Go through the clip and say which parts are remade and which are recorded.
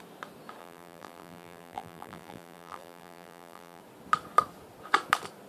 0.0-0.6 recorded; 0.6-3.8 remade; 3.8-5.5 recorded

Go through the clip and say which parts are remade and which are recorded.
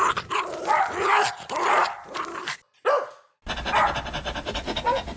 0.0-5.2 recorded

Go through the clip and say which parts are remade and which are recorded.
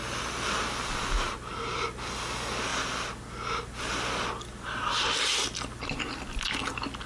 0.0-7.1 recorded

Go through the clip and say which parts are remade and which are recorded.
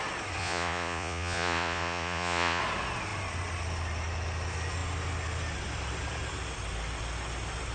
0.0-0.4 recorded; 0.4-2.6 remade; 2.6-7.7 recorded